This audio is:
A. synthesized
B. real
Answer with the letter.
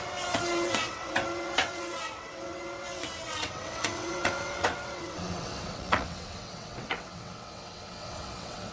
A